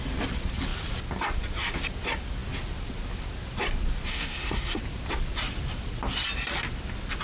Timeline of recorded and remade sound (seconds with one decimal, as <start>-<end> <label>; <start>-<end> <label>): 0.0-4.1 recorded; 4.1-4.8 remade; 4.8-7.2 recorded